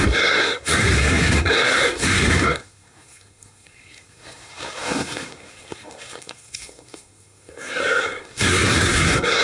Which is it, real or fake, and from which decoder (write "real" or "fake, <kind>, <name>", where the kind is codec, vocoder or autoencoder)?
fake, codec, SNAC